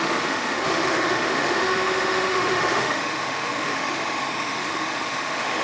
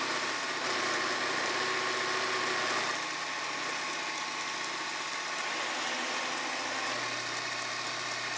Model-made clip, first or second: first